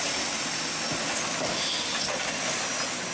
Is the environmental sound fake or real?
real